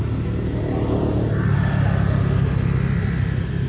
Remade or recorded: recorded